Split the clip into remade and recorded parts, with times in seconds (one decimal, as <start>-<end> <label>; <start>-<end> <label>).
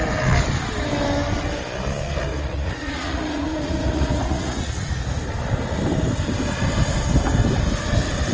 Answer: 0.0-2.3 recorded; 2.3-4.9 remade; 4.9-8.3 recorded